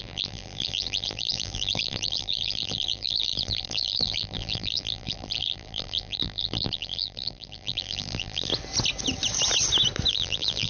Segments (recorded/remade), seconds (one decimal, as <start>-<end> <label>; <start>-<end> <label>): 0.0-8.5 remade; 8.5-10.1 recorded; 10.1-10.7 remade